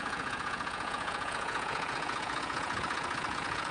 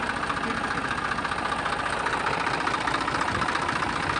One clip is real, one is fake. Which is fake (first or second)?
first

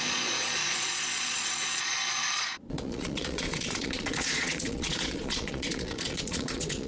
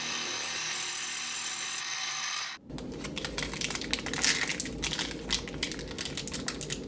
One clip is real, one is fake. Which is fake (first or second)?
first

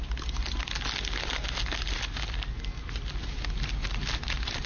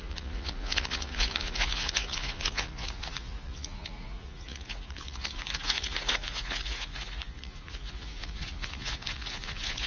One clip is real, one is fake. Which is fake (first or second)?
second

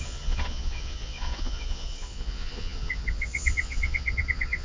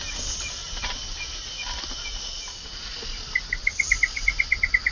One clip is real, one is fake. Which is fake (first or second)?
first